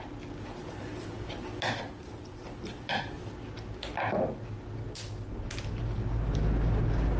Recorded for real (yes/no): yes